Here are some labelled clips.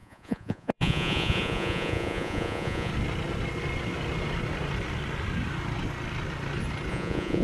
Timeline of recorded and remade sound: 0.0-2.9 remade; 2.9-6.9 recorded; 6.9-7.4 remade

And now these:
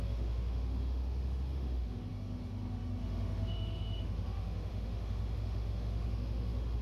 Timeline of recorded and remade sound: 0.0-6.8 remade

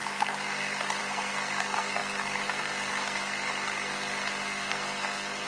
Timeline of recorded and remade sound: 0.0-5.5 remade

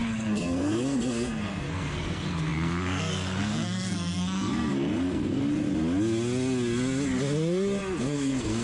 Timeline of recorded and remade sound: 0.0-5.4 remade; 5.4-8.0 recorded; 8.0-8.6 remade

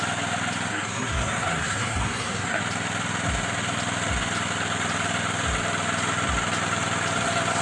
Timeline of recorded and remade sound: 0.0-0.7 recorded; 0.7-2.6 remade; 2.6-7.6 recorded

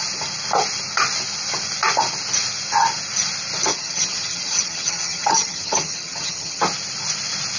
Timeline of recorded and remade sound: 0.0-3.7 recorded; 3.7-6.6 remade; 6.6-7.6 recorded

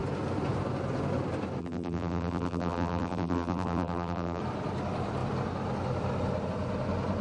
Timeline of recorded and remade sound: 0.0-1.6 recorded; 1.6-4.4 remade; 4.4-7.2 recorded

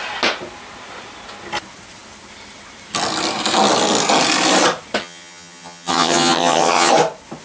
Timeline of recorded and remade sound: 0.0-5.0 recorded; 5.0-6.9 remade; 6.9-7.4 recorded